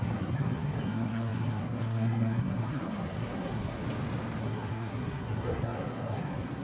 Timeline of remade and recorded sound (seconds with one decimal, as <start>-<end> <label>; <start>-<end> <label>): 0.0-3.8 remade; 3.8-4.4 recorded; 4.4-6.6 remade